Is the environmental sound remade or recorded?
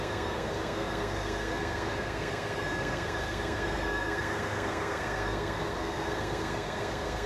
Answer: remade